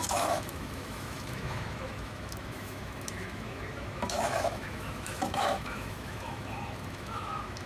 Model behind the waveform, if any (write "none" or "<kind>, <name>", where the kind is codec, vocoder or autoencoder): autoencoder, DAC-VAE